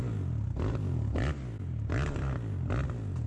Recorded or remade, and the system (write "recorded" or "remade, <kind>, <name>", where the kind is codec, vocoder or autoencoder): recorded